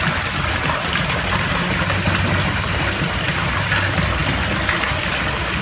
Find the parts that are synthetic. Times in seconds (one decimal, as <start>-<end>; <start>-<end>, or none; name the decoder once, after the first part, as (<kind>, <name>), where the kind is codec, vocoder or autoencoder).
none